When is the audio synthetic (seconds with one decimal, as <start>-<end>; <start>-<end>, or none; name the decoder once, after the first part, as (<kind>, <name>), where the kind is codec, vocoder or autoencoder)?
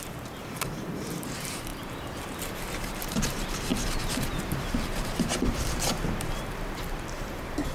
0.0-7.7 (vocoder, BigVGAN v2)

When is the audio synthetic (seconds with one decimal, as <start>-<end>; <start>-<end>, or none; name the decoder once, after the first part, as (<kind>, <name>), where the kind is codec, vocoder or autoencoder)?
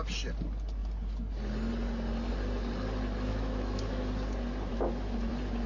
3.3-4.1 (autoencoder, DAC-VAE); 4.7-5.3